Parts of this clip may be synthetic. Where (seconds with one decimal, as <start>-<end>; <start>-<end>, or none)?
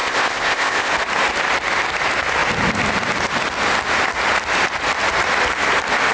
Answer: 0.0-0.9